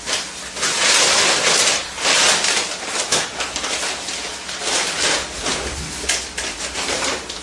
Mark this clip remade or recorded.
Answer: recorded